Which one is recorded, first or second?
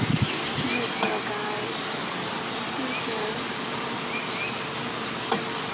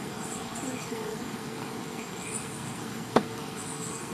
first